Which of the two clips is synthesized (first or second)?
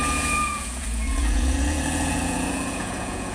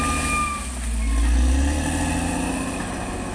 first